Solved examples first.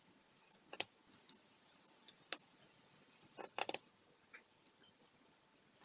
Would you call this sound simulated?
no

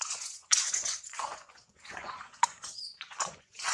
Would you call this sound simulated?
yes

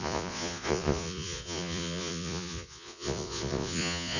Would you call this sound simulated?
yes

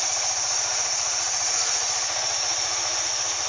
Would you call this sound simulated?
yes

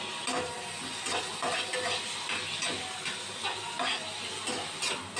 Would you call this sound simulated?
no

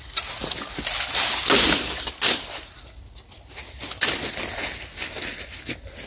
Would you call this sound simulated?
no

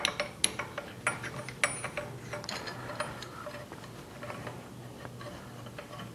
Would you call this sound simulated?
no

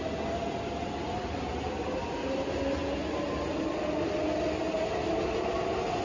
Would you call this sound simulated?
no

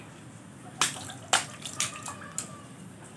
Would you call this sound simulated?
no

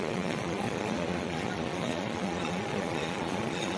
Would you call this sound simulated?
yes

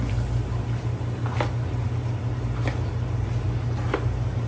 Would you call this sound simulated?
no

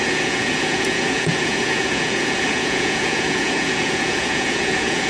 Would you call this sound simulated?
yes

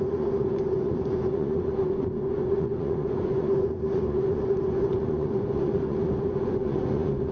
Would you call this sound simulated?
yes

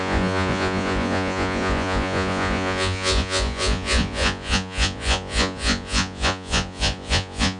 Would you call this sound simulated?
yes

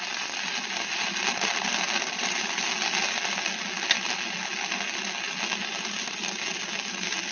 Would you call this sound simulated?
no